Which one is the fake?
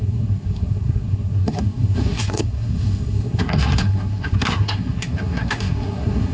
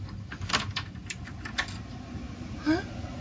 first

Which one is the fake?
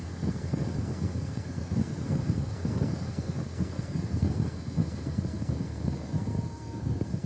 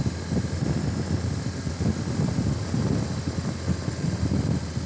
first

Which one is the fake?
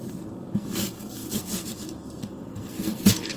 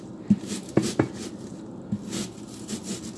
first